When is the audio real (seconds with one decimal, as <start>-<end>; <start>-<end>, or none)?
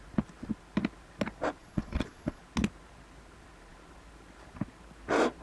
0.0-1.6; 2.4-5.4